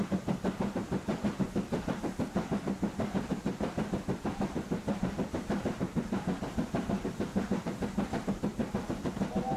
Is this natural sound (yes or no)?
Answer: no